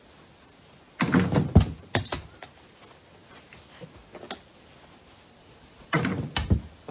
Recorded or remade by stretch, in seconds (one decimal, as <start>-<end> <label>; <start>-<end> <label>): 0.0-5.4 recorded; 5.4-6.0 remade; 6.0-6.9 recorded

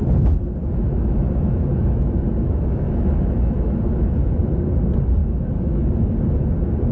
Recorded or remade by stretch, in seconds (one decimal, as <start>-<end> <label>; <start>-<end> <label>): 0.0-0.6 recorded; 0.6-4.4 remade; 4.4-5.2 recorded; 5.2-5.8 remade; 5.8-6.9 recorded

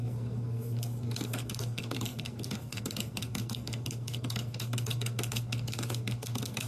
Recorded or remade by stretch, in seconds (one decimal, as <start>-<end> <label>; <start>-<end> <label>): 0.0-6.7 remade

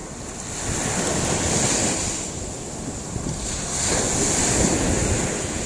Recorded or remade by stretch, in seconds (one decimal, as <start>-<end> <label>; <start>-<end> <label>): 0.0-5.7 recorded

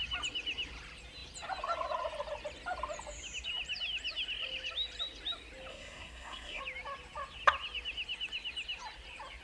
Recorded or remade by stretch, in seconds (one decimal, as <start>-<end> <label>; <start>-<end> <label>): 0.0-5.7 recorded; 5.7-6.6 remade; 6.6-9.4 recorded

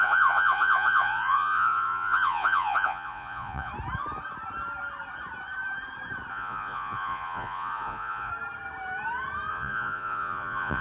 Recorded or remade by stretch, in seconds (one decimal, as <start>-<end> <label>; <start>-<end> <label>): 0.0-3.7 remade; 3.7-6.3 recorded; 6.3-8.3 remade; 8.3-9.5 recorded; 9.5-10.8 remade

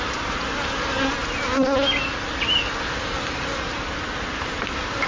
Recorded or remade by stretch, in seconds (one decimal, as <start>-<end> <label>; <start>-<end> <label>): 0.0-5.1 recorded